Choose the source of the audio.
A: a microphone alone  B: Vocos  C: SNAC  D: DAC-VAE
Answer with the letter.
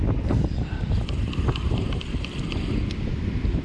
A